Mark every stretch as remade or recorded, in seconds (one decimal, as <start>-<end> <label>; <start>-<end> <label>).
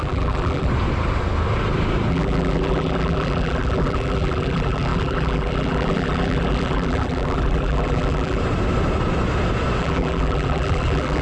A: 0.0-0.7 remade; 0.7-2.1 recorded; 2.1-8.4 remade; 8.4-9.8 recorded; 9.8-11.2 remade